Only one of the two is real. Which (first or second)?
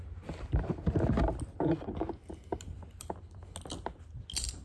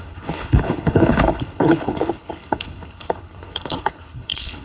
first